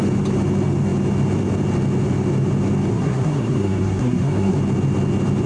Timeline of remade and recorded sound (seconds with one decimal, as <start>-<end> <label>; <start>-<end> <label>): 0.0-2.9 recorded; 2.9-4.6 remade; 4.6-5.5 recorded